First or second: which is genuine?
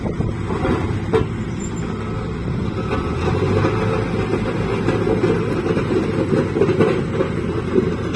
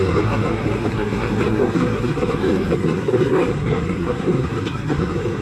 first